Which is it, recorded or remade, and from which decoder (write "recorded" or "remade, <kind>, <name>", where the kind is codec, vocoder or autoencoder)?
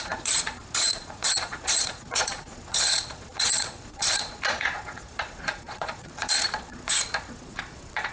remade, vocoder, Vocos